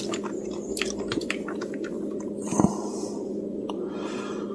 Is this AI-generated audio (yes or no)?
no